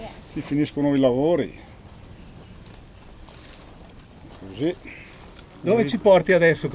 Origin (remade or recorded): recorded